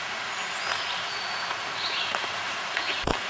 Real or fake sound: fake